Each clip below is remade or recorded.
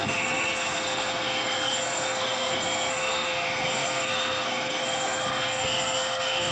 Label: remade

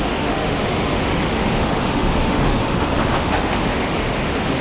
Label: remade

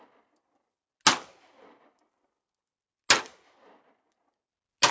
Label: recorded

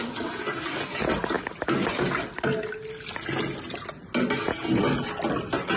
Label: recorded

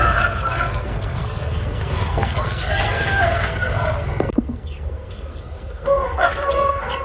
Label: remade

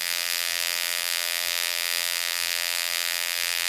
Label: remade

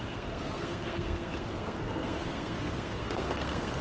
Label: remade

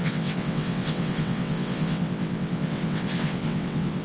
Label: remade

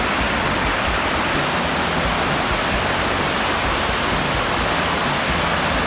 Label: recorded